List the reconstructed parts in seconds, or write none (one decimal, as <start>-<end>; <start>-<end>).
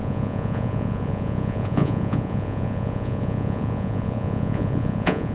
0.0-5.3